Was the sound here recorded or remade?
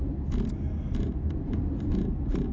recorded